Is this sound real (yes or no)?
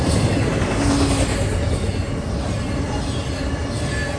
yes